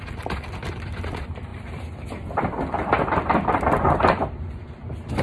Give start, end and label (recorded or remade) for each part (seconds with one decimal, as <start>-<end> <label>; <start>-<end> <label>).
0.0-1.5 recorded; 1.5-4.6 remade; 4.6-5.2 recorded